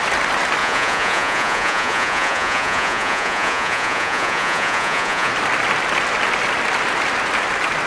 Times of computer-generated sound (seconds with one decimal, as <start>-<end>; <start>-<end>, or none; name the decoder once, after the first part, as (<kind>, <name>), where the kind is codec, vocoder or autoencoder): 0.6-5.3 (vocoder, Vocos)